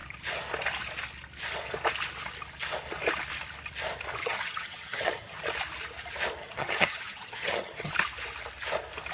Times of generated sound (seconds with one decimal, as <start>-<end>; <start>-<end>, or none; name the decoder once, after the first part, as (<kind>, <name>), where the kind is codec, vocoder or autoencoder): 4.2-5.4 (vocoder, HiFi-GAN); 6.4-7.9